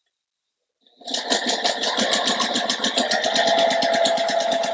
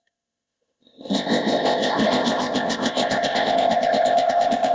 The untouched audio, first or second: first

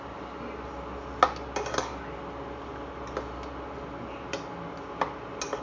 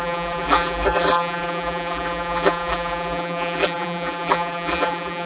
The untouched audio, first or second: first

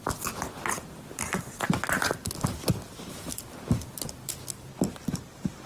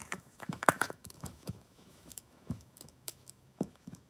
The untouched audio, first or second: first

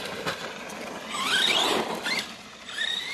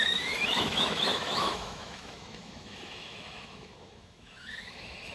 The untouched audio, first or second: first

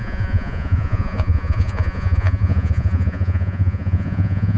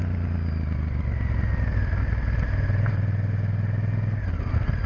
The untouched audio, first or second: second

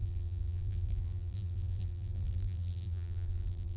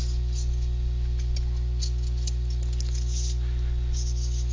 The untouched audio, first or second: second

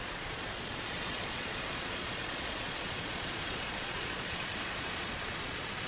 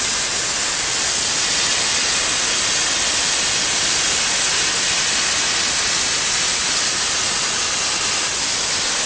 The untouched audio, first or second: second